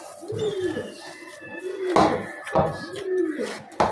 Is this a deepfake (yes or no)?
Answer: no